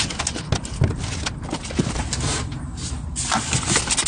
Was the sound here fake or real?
real